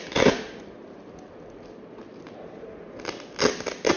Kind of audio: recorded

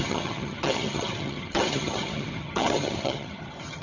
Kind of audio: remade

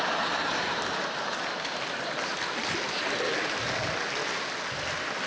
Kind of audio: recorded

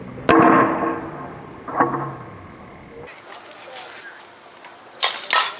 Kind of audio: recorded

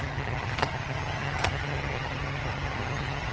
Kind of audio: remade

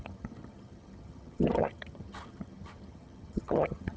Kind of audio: remade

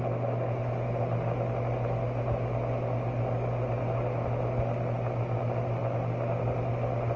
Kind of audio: recorded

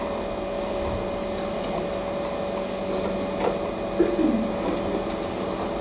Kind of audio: recorded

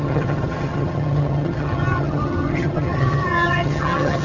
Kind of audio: remade